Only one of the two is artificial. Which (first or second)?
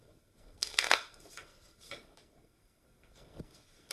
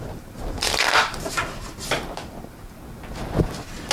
first